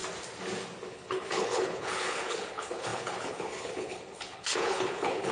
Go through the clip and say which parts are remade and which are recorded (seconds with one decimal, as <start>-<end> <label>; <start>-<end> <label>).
0.0-0.9 recorded; 0.9-5.3 remade